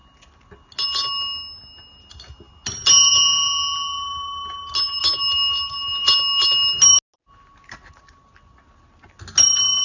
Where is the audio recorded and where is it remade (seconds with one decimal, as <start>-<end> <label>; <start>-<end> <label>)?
0.0-9.8 recorded